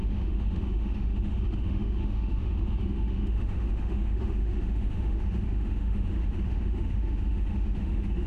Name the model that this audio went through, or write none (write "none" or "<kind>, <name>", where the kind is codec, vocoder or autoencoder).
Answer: autoencoder, DAC-VAE